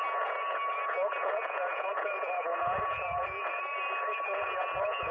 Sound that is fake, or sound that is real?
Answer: fake